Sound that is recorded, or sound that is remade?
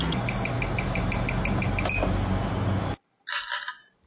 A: recorded